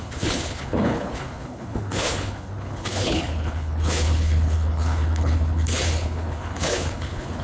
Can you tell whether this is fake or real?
fake